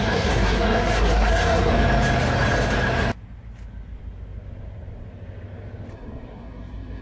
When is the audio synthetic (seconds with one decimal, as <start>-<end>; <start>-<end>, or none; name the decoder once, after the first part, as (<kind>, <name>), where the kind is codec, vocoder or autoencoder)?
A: 0.0-1.7 (codec, SNAC); 5.9-7.0